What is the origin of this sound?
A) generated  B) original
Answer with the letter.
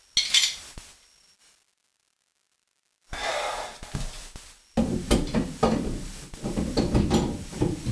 B